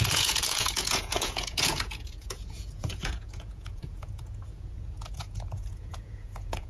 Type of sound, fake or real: fake